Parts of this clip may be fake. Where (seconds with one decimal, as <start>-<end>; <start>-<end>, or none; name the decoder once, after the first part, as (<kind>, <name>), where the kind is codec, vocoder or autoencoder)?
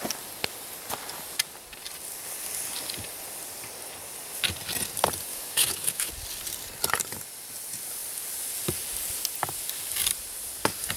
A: 5.3-6.1 (autoencoder, DAC-VAE)